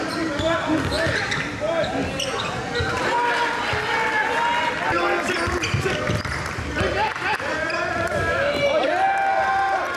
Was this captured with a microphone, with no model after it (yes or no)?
yes